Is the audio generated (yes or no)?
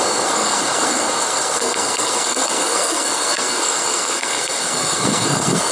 yes